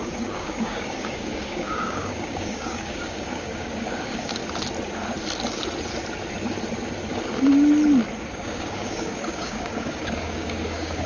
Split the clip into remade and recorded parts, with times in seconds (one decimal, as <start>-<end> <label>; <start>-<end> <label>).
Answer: 0.0-4.4 remade; 4.4-8.2 recorded; 8.2-11.1 remade